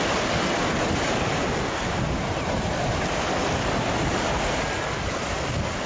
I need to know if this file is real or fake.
real